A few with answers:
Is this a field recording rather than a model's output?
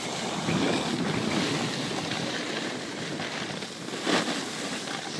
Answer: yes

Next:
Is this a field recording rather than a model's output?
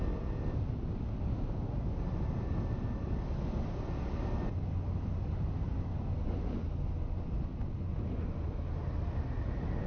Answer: yes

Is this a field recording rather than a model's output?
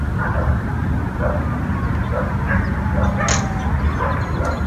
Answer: yes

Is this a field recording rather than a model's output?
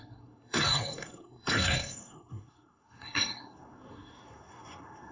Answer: no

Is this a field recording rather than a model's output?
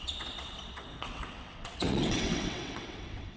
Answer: no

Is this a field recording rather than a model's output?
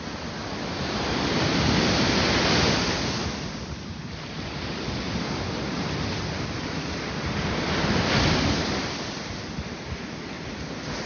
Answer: yes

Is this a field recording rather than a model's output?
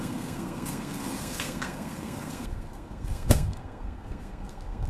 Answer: no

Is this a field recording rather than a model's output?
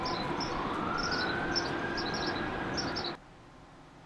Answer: yes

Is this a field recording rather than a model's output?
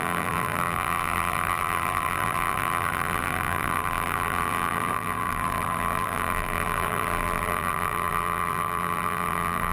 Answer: no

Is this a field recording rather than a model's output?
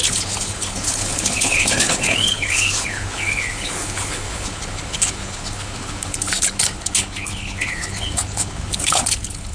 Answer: no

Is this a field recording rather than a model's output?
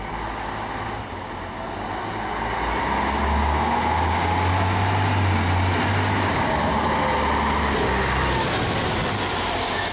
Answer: yes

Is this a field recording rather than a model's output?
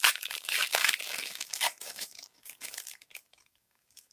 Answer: no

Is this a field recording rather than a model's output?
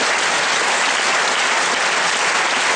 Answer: yes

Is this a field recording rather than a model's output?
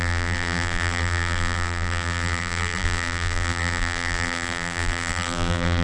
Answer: no